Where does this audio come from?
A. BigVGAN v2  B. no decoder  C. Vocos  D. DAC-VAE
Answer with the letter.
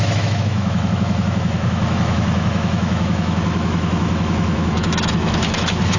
D